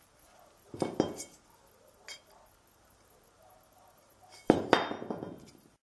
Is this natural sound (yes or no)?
yes